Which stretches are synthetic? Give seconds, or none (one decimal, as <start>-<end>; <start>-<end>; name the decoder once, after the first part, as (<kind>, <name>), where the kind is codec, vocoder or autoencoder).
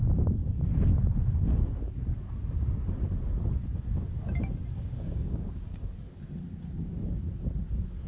4.7-5.8 (codec, DAC)